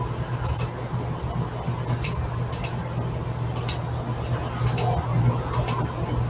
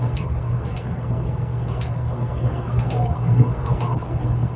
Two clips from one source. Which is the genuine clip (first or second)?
first